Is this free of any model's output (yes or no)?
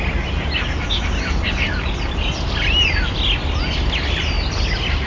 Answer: yes